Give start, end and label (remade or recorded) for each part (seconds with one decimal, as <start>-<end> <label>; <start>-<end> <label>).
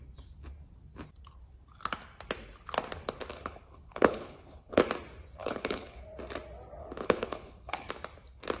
0.0-3.3 recorded; 3.3-4.8 remade; 4.8-5.4 recorded; 5.4-6.0 remade; 6.0-6.8 recorded; 6.8-7.9 remade; 7.9-8.6 recorded